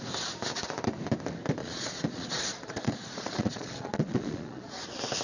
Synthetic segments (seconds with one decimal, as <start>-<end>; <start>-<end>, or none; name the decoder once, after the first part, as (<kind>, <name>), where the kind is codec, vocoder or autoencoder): 1.6-4.7 (vocoder, Vocos)